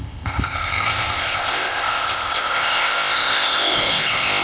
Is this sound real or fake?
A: fake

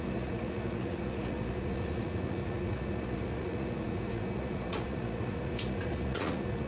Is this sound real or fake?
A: fake